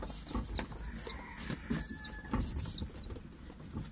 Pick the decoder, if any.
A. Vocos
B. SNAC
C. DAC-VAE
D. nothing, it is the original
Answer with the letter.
D